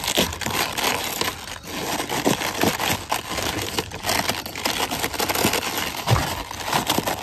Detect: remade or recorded recorded